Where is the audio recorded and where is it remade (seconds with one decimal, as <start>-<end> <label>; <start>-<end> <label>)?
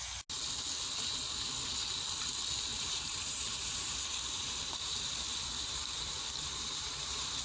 0.0-2.7 recorded; 2.7-7.4 remade